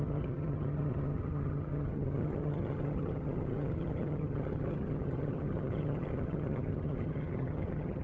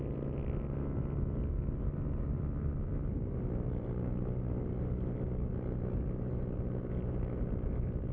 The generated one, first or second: first